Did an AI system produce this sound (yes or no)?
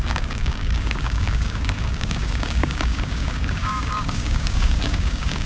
yes